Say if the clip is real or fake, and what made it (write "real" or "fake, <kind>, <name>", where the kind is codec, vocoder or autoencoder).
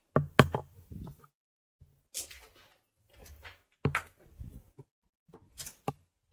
real